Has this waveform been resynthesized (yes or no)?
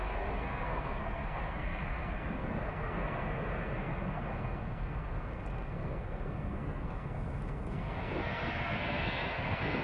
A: yes